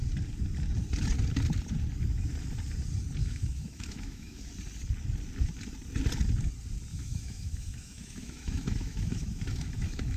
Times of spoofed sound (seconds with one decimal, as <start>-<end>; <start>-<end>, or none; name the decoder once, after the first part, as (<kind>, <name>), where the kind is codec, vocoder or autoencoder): 3.2-4.5 (autoencoder, DAC-VAE); 6.9-10.2